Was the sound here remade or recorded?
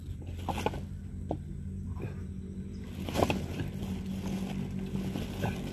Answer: recorded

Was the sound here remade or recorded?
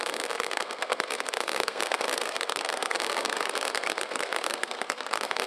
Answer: remade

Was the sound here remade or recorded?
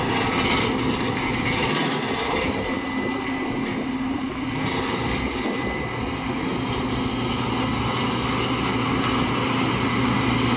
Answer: recorded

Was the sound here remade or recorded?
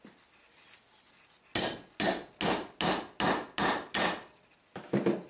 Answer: recorded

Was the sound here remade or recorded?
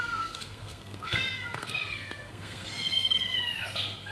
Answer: remade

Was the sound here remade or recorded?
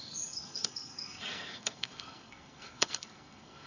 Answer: remade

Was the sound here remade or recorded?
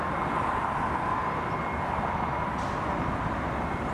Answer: recorded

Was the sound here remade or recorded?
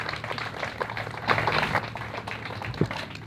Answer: recorded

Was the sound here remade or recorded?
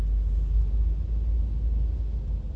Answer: recorded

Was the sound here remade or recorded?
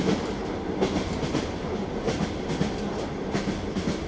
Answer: recorded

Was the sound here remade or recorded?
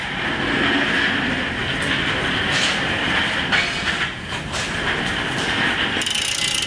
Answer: recorded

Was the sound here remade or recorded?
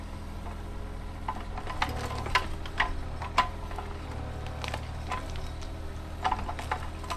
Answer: recorded